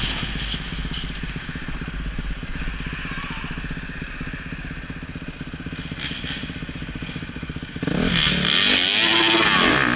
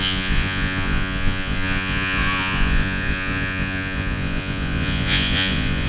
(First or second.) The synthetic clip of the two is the second